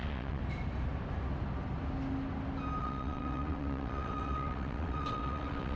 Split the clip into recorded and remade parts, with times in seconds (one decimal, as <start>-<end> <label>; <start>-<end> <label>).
0.0-0.4 remade; 0.4-2.8 recorded; 2.8-5.8 remade

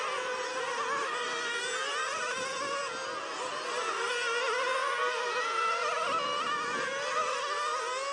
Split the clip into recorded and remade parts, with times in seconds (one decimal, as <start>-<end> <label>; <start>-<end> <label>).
0.0-8.1 recorded

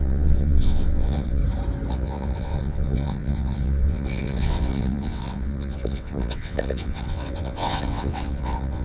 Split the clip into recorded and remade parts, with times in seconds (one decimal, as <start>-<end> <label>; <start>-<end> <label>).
0.0-1.4 remade; 1.4-1.9 recorded; 1.9-8.8 remade

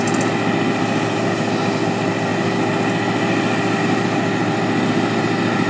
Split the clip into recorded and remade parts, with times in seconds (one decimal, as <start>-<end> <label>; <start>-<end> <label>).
0.0-5.7 recorded

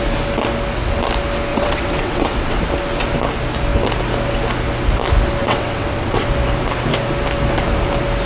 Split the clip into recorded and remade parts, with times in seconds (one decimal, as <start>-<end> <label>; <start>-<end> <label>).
0.0-1.5 recorded; 1.5-2.6 remade; 2.6-5.4 recorded; 5.4-6.3 remade; 6.3-8.3 recorded

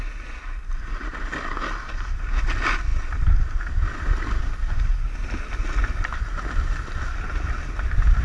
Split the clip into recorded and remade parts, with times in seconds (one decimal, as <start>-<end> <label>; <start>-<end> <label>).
0.0-8.2 recorded

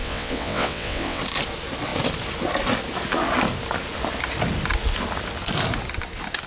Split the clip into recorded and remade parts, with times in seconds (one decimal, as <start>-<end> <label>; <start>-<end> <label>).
0.0-1.2 remade; 1.2-6.5 recorded

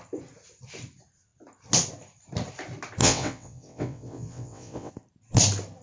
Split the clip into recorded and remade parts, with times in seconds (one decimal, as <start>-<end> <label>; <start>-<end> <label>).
0.0-3.0 recorded; 3.0-4.9 remade; 4.9-5.8 recorded